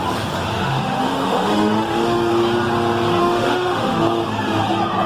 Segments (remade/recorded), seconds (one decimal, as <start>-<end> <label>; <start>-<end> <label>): 0.0-0.5 recorded; 0.5-2.3 remade; 2.3-3.2 recorded; 3.2-4.0 remade; 4.0-5.1 recorded